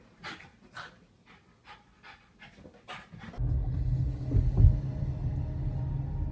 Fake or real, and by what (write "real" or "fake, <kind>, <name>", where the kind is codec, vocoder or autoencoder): real